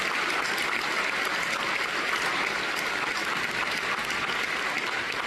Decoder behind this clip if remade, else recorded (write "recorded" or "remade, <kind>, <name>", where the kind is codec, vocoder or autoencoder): recorded